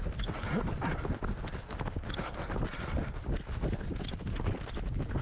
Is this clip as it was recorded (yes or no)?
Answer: yes